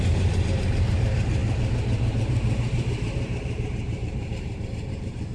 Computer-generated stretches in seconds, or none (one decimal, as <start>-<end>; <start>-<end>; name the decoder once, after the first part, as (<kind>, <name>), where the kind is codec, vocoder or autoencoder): 0.0-5.3 (vocoder, BigVGAN v2)